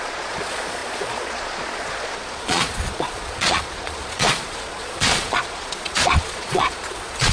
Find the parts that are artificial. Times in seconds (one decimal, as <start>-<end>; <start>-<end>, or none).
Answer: 0.0-7.3